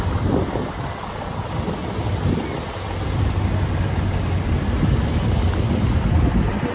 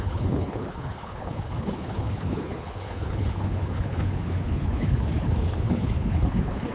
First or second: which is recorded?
first